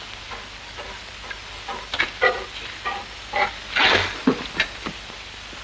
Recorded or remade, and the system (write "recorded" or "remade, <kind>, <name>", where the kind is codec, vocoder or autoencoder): recorded